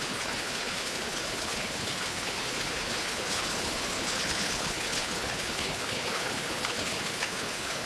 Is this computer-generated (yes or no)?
yes